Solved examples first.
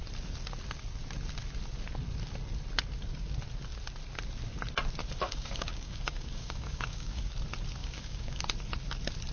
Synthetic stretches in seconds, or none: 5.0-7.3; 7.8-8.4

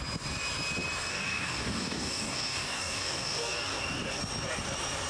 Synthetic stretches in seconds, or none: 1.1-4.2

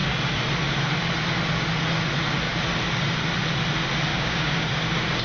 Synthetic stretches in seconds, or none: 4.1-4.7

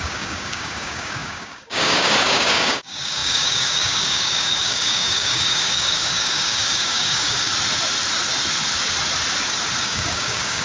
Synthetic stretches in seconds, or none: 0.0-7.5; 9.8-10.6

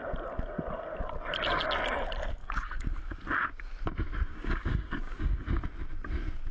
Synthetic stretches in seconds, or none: 2.4-3.0; 4.3-5.6

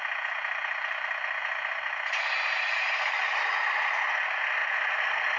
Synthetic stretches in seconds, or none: none

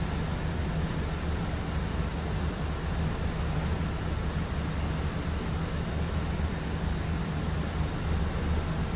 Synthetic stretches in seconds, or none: none

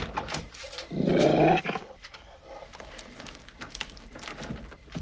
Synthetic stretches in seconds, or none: 1.3-2.4